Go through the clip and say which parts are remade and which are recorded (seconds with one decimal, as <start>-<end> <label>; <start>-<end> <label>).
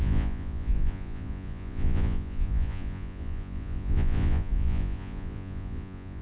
0.0-6.2 remade